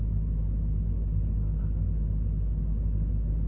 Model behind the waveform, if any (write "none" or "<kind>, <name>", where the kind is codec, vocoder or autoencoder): none